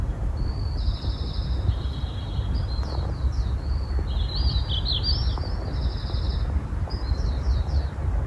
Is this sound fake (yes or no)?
no